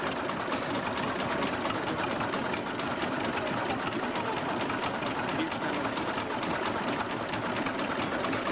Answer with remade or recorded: recorded